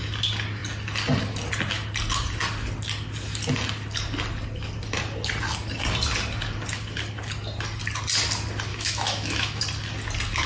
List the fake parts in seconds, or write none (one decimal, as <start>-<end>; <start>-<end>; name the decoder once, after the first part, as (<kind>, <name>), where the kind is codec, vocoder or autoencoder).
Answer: 8.7-9.6 (autoencoder, DAC-VAE)